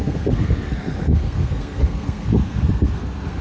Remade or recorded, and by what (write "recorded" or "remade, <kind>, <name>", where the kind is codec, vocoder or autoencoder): remade, codec, SNAC